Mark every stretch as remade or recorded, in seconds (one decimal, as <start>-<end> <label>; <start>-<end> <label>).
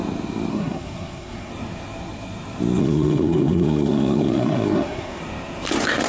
0.0-0.5 recorded; 0.5-1.5 remade; 1.5-2.8 recorded; 2.8-5.2 remade; 5.2-6.1 recorded